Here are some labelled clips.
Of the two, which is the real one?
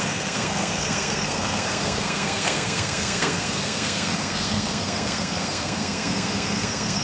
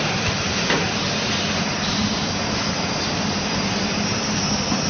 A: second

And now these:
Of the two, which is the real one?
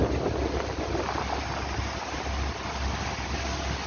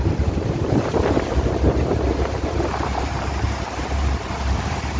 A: first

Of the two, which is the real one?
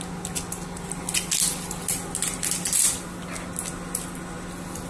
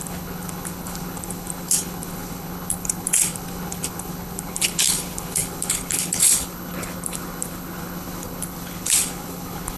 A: first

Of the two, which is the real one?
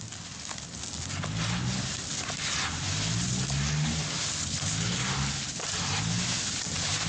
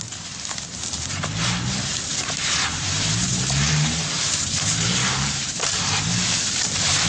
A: first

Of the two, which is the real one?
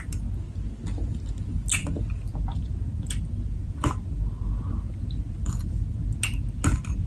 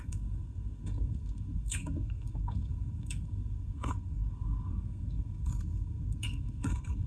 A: first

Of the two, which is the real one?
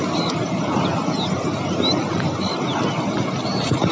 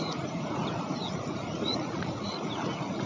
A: first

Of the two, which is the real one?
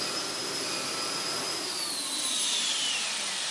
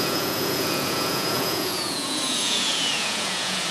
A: first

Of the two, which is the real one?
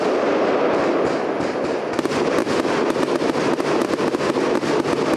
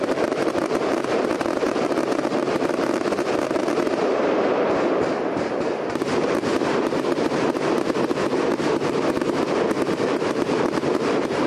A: first